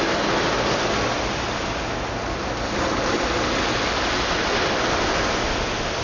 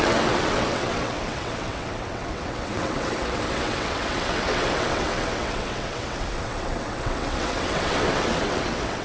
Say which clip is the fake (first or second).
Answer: second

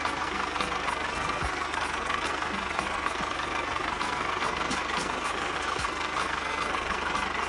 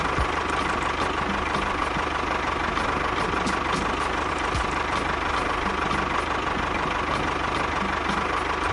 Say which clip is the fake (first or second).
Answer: first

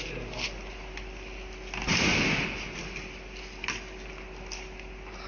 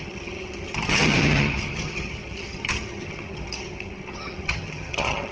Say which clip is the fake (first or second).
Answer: second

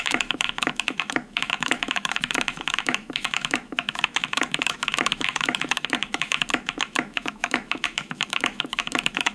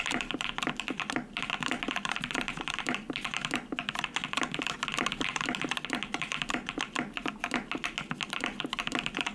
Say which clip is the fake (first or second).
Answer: first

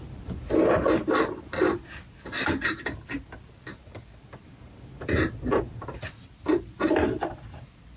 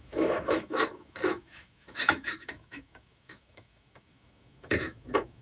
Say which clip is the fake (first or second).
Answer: second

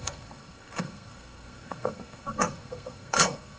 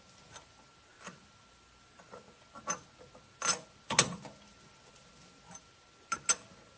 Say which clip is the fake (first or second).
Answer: first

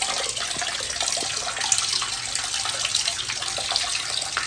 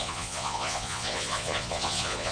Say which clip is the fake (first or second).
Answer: second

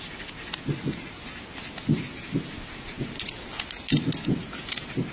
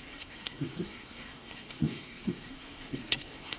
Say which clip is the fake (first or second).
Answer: second